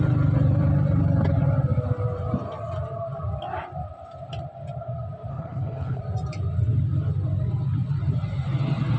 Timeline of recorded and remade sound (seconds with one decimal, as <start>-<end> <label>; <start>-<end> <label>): 0.0-5.3 recorded; 5.3-6.0 remade; 6.0-9.0 recorded